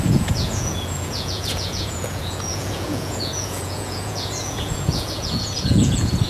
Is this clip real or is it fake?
fake